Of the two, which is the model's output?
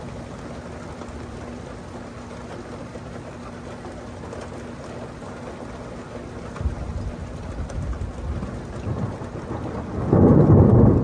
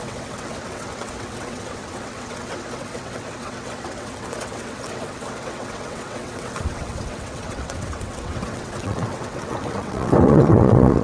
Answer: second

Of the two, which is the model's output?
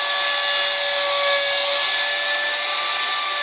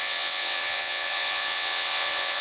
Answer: second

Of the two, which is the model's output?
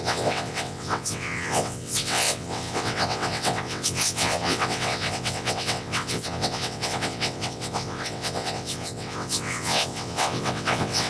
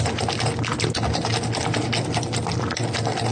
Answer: first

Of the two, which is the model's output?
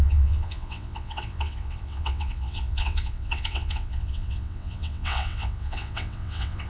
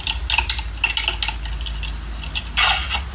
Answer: first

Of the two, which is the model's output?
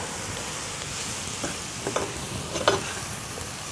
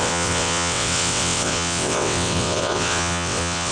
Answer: second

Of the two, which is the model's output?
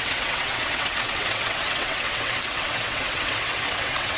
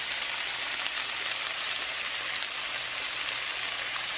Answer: first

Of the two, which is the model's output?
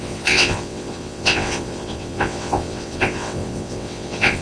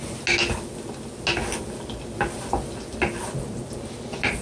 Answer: first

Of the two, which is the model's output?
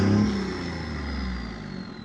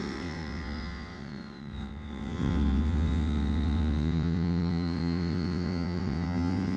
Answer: second